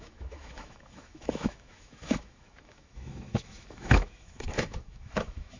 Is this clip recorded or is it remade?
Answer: remade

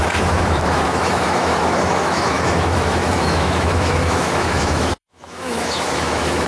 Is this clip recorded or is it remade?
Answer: remade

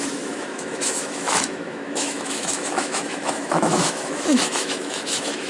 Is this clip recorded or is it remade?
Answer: remade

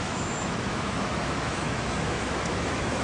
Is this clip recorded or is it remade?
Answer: remade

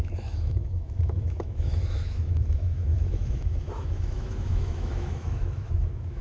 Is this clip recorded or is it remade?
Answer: remade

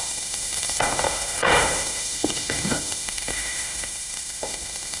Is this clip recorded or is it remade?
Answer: remade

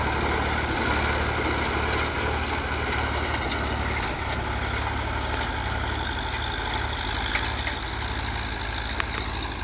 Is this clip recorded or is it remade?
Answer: recorded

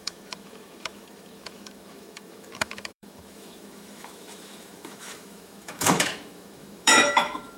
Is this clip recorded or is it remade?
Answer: remade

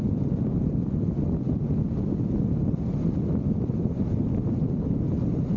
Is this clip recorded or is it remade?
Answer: recorded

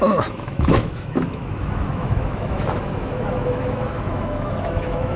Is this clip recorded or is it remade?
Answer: remade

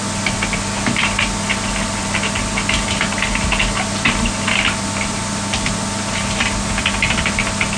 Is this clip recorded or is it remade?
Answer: recorded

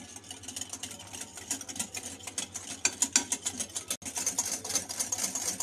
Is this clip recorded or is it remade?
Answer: recorded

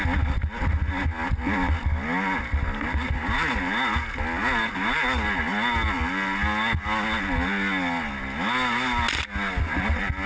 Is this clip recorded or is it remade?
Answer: recorded